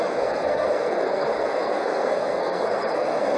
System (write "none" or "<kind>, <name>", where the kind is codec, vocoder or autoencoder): codec, SNAC